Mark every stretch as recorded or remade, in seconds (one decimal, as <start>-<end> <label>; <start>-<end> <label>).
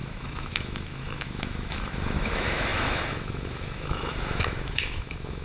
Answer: 0.0-5.4 remade